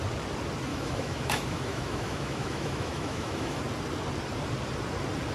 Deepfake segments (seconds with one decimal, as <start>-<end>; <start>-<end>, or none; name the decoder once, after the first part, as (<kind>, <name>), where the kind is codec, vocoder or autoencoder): 0.7-3.6 (autoencoder, DAC-VAE)